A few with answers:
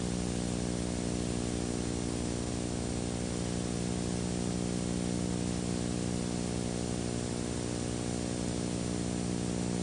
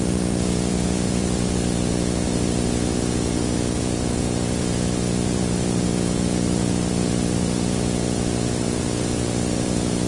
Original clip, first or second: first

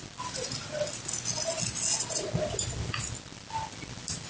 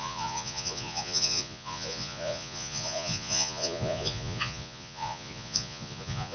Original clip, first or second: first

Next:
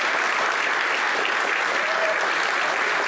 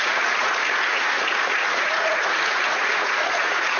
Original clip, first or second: first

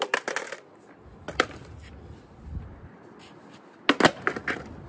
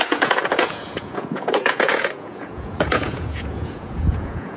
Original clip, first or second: first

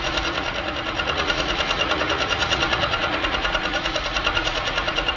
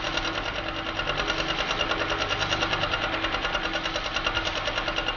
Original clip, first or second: second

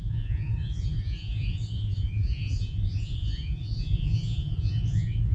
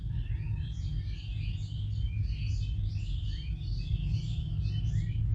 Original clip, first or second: second